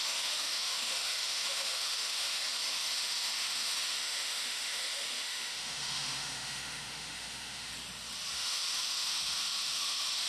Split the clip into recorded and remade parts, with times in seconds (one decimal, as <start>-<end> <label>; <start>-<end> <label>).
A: 0.0-7.7 remade; 7.7-8.3 recorded; 8.3-10.3 remade